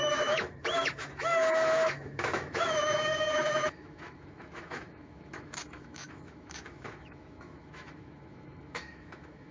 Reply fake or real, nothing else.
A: fake